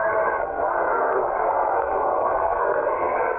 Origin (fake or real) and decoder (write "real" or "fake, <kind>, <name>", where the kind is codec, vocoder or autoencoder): fake, codec, SNAC